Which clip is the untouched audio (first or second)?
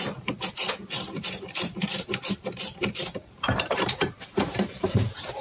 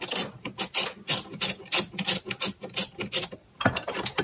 second